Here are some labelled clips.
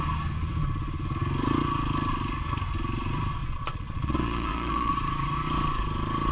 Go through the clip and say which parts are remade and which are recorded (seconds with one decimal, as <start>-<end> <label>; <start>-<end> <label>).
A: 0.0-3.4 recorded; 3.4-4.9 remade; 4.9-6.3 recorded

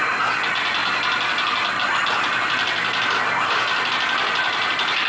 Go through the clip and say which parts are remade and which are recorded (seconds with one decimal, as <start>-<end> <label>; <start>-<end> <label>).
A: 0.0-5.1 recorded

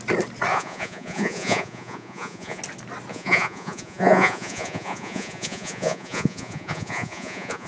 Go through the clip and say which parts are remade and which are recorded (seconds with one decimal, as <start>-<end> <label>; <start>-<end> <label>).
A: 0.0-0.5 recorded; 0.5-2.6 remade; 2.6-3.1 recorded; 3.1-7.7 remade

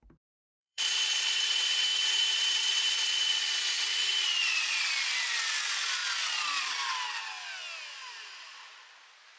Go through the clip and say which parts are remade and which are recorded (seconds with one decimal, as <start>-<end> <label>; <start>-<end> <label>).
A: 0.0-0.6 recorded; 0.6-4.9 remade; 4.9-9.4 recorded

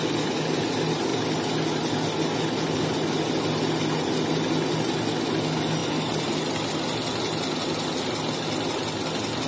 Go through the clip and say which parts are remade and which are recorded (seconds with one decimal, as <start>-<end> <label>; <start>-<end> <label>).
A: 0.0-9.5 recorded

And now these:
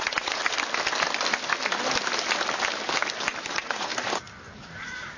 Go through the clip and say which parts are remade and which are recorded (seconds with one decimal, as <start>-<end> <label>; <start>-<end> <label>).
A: 0.0-0.4 remade; 0.4-3.5 recorded; 3.5-3.9 remade; 3.9-4.6 recorded; 4.6-5.2 remade